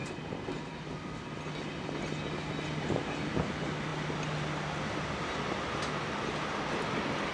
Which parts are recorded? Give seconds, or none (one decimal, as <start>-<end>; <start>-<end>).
0.0-7.3